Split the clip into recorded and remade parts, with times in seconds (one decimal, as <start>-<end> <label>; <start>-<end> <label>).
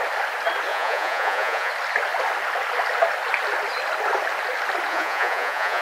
0.0-0.7 recorded; 0.7-1.7 remade; 1.7-4.9 recorded; 4.9-5.8 remade